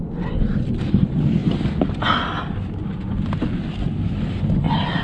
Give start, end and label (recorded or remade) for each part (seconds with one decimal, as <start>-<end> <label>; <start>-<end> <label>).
0.0-5.0 recorded